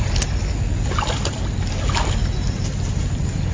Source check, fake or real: real